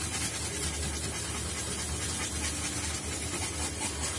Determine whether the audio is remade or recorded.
recorded